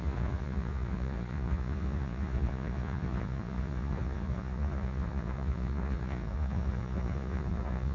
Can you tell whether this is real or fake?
fake